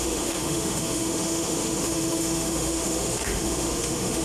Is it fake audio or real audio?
fake